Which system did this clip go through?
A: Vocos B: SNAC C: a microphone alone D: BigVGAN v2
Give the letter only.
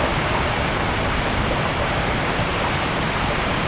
D